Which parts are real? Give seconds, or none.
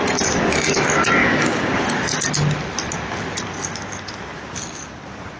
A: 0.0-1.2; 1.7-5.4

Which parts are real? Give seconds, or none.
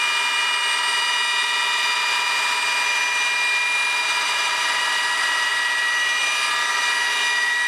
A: 0.0-4.0; 4.8-7.7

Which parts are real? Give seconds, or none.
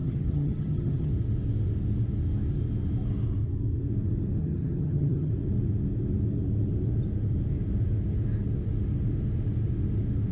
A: 1.1-4.4; 5.3-10.3